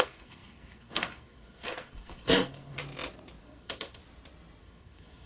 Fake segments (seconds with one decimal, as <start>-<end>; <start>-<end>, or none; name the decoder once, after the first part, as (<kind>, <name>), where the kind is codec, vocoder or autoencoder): 0.0-2.8 (codec, SNAC); 3.4-4.0; 4.6-5.3